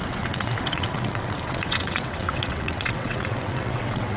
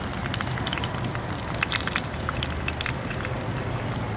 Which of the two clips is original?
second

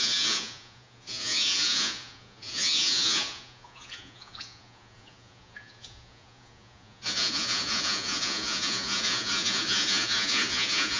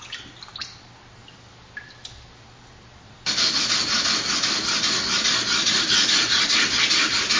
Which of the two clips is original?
second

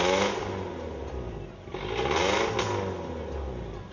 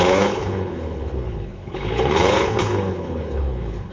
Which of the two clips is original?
first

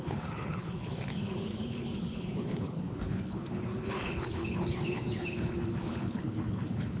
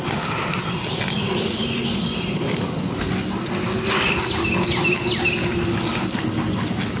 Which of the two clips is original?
second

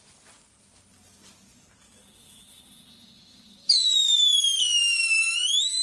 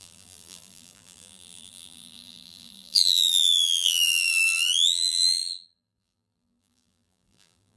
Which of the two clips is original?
first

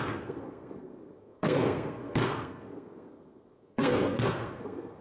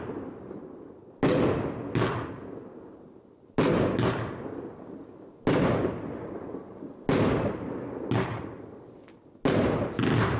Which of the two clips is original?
second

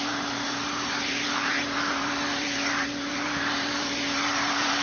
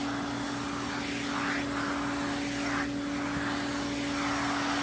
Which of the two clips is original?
second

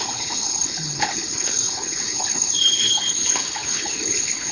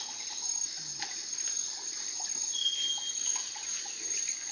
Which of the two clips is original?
second